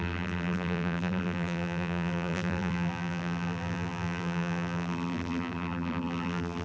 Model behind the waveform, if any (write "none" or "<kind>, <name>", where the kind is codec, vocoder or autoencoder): vocoder, BigVGAN v2